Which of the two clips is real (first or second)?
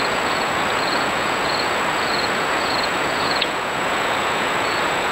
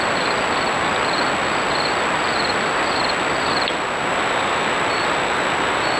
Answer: second